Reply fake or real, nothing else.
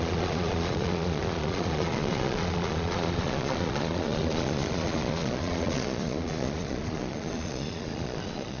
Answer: fake